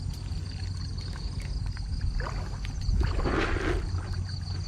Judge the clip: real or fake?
real